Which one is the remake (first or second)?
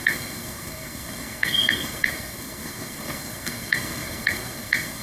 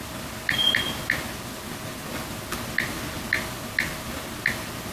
first